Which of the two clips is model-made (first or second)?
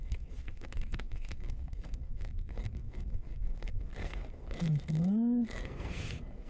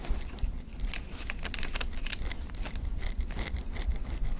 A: first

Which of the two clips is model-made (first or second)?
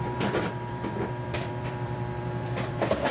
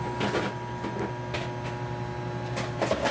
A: first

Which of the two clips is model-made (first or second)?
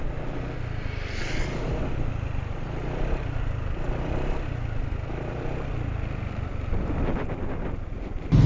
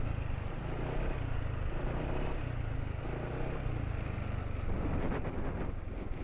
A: first